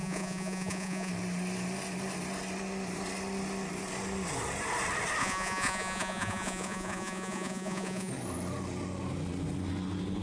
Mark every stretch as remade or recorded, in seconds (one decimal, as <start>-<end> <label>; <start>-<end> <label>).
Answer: 0.0-1.1 remade; 1.1-5.2 recorded; 5.2-8.1 remade; 8.1-10.2 recorded